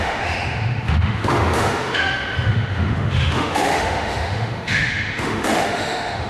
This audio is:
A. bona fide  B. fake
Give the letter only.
B